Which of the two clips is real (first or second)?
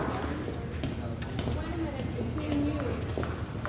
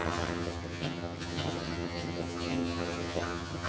first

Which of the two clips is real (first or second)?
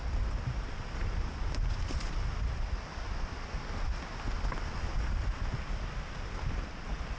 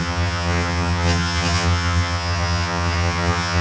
first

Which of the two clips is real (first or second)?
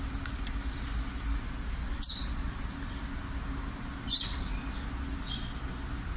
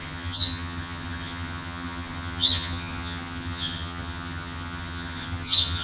first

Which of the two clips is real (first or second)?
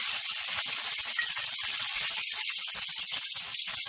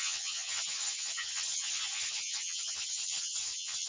first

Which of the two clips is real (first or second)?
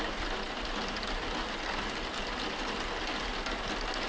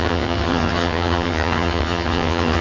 first